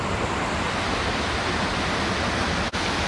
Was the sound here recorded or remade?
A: recorded